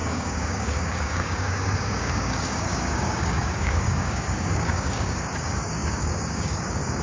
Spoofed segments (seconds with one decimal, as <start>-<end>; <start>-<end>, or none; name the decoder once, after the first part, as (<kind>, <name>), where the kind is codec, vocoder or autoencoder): 0.0-7.0 (codec, DAC)